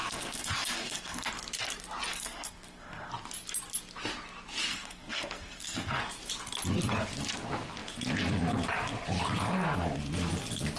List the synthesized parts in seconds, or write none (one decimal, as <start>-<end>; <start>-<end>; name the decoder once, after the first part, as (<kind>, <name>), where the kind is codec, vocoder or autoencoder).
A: 0.0-1.3 (codec, SNAC); 2.1-3.1; 4.7-6.0